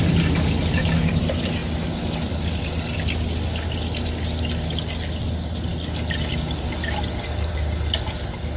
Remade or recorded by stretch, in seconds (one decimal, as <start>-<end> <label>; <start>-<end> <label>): 0.0-8.6 recorded